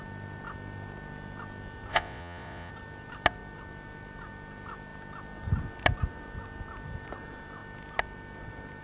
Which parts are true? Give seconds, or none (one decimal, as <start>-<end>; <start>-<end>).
0.0-1.9; 2.7-8.8